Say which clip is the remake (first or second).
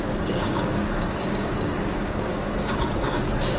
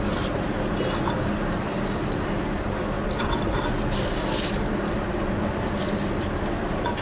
first